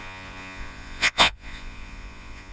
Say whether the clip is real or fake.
fake